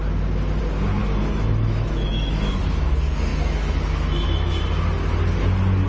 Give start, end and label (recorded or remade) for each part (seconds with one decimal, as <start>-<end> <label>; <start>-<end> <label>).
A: 0.0-1.0 recorded; 1.0-2.6 remade; 2.6-3.3 recorded; 3.3-4.6 remade; 4.6-5.9 recorded